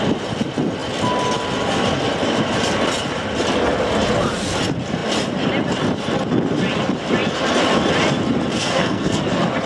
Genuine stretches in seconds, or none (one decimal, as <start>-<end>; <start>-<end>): 0.0-8.5; 9.2-9.7

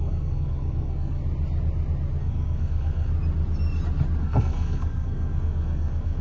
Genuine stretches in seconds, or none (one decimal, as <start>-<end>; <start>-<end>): 1.2-2.2; 3.1-4.2